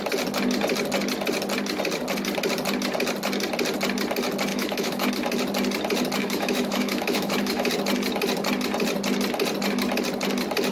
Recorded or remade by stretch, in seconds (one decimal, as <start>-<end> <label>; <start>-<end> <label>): 0.0-4.5 recorded; 4.5-5.1 remade; 5.1-6.2 recorded; 6.2-7.7 remade; 7.7-10.7 recorded